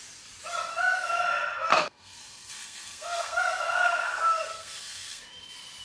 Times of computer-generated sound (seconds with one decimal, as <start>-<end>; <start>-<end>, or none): 0.7-1.2; 1.7-5.2